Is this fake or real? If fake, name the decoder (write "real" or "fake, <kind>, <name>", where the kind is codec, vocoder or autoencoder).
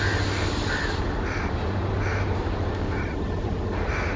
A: real